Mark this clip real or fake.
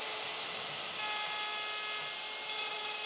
real